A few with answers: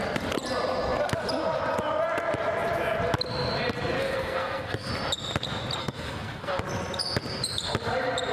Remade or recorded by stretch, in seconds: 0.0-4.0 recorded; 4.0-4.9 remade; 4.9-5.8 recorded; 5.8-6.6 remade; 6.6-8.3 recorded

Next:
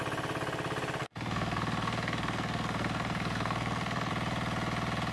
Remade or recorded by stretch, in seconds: 0.0-1.0 recorded; 1.0-4.1 remade; 4.1-5.1 recorded

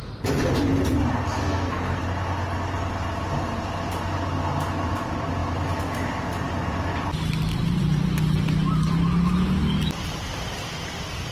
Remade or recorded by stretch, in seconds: 0.0-1.4 recorded; 1.4-2.0 remade; 2.0-11.3 recorded

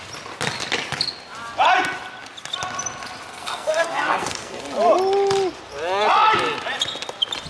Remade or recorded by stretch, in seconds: 0.0-3.3 recorded; 3.3-4.6 remade; 4.6-7.5 recorded

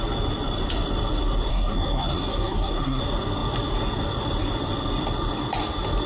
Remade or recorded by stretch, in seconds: 0.0-1.5 recorded; 1.5-3.0 remade; 3.0-6.1 recorded